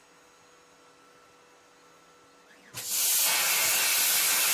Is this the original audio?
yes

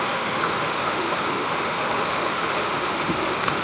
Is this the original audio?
no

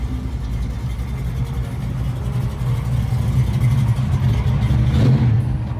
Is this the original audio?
yes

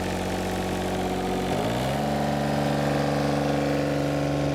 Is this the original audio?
yes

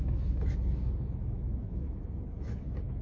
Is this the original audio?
no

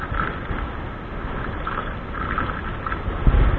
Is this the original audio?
yes